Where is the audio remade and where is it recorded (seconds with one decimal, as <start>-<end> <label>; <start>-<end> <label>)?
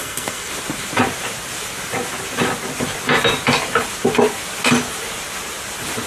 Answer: 0.0-0.5 remade; 0.5-6.1 recorded